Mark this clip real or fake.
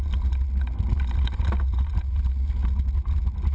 real